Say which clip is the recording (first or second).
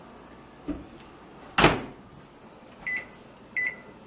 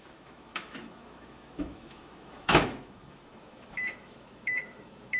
first